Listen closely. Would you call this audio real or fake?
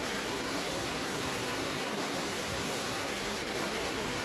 fake